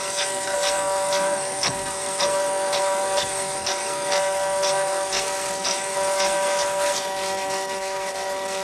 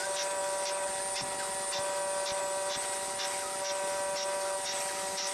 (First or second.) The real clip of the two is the second